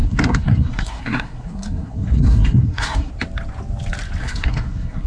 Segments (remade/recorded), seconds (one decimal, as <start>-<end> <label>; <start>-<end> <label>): 0.0-3.1 remade; 3.1-4.2 recorded; 4.2-5.1 remade